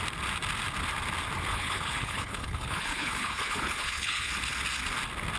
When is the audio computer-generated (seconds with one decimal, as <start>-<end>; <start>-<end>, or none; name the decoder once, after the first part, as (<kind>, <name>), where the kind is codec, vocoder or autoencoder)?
1.5-4.3 (codec, HILCodec)